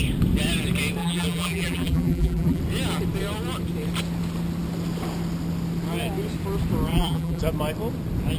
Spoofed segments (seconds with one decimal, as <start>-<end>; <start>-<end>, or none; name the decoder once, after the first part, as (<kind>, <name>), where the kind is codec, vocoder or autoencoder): 1.0-2.6 (vocoder, BigVGAN v2); 6.9-7.4